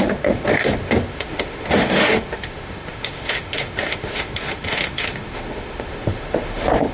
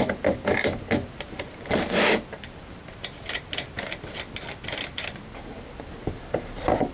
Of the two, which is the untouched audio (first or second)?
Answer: second